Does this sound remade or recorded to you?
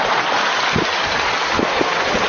recorded